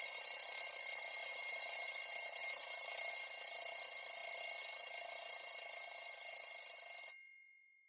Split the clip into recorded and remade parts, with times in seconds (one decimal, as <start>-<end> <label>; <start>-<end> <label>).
0.0-1.2 recorded; 1.2-1.9 remade; 1.9-2.4 recorded; 2.4-3.1 remade; 3.1-7.9 recorded